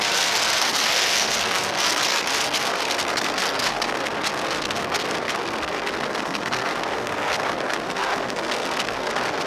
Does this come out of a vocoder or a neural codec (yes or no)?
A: yes